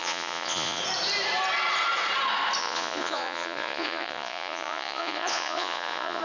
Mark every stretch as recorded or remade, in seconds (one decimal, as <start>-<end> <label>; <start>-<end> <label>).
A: 0.0-0.8 remade; 0.8-2.6 recorded; 2.6-6.2 remade